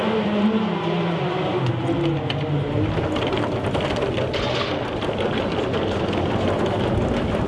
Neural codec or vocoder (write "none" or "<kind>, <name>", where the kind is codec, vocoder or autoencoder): none